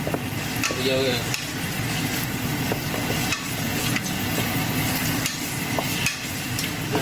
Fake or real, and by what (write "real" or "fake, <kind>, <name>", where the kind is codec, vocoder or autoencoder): real